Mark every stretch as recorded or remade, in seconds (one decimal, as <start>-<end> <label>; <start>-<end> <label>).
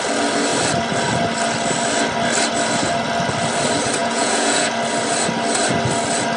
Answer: 0.0-4.0 recorded; 4.0-4.7 remade; 4.7-6.4 recorded